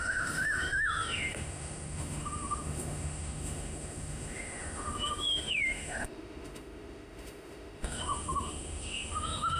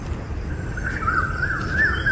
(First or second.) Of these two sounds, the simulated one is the first